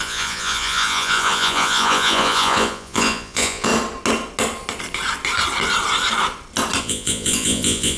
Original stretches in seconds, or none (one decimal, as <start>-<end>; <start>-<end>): 3.7-6.8